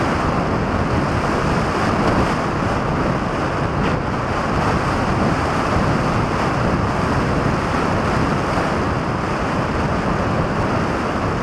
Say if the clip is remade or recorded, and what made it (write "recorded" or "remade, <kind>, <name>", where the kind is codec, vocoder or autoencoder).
recorded